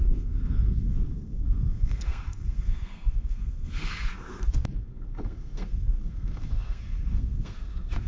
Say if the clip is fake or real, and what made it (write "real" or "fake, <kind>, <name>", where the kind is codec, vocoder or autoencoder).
fake, codec, SNAC